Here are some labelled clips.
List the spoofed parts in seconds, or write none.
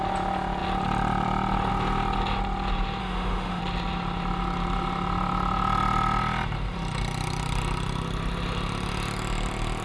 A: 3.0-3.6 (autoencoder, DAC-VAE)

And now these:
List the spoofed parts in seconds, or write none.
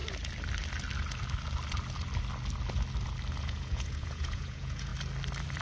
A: 3.4-4.9 (vocoder, Vocos)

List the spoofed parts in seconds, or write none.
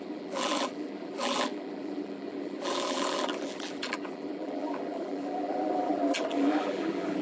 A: 0.0-7.2 (vocoder, BigVGAN v2)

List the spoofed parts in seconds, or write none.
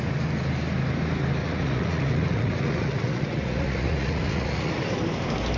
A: 1.4-4.8 (vocoder, Vocos)